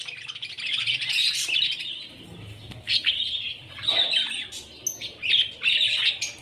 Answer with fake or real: real